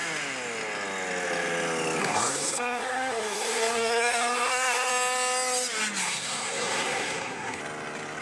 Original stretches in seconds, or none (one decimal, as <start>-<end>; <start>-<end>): 0.0-2.0; 4.9-6.0; 7.6-8.2

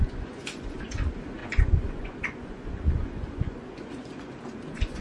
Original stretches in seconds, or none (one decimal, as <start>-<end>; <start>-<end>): none

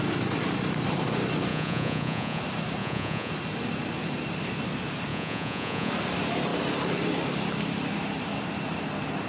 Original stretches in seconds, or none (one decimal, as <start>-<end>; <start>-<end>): 0.0-1.5; 2.4-2.8; 3.3-5.1; 5.9-9.3

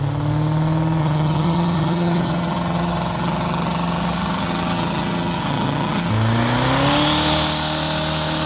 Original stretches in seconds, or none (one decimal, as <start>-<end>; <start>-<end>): 0.0-1.0; 6.1-8.5

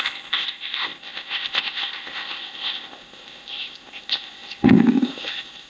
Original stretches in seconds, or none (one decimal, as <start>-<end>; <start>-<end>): none